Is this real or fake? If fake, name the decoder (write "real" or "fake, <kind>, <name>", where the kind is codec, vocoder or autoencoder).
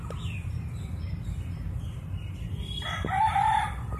real